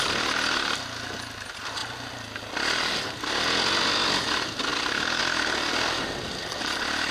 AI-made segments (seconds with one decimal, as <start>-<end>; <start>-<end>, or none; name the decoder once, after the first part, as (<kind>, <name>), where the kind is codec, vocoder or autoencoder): 4.7-5.2 (vocoder, BigVGAN v2)